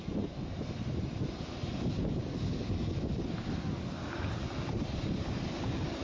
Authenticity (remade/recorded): recorded